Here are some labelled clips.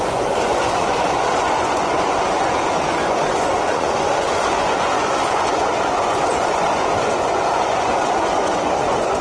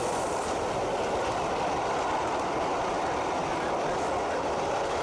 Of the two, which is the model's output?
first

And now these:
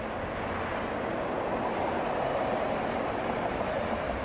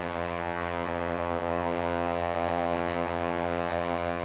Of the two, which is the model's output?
second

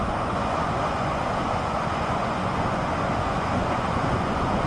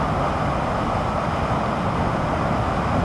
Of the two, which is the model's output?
first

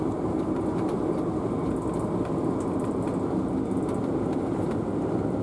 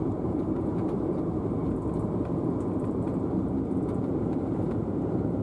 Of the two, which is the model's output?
second